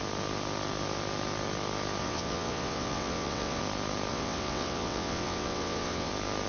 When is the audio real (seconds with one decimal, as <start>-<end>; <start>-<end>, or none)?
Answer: 0.0-2.0; 3.6-4.1; 6.1-6.5